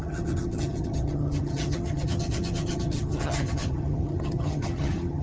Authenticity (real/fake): fake